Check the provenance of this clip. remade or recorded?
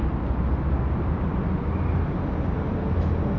recorded